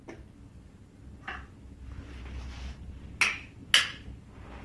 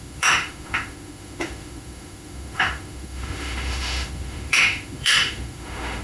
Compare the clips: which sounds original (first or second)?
first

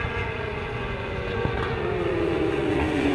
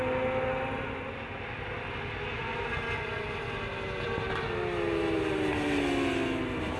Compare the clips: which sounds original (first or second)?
second